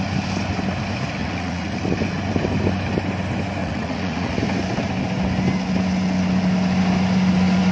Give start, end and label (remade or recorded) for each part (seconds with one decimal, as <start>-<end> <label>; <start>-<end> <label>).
0.0-1.2 recorded; 1.2-1.8 remade; 1.8-3.6 recorded; 3.6-4.4 remade; 4.4-7.7 recorded